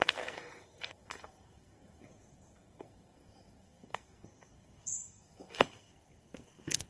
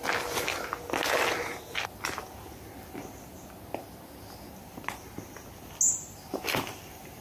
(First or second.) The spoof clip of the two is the first